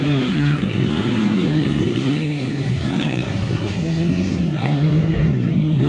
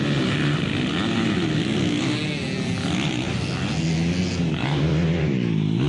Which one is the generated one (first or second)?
first